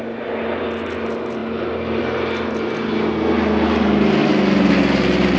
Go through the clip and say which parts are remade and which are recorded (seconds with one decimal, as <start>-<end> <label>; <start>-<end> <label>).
0.0-5.4 recorded